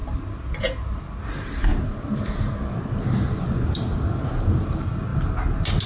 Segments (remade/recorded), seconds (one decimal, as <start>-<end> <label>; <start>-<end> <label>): 0.0-5.9 recorded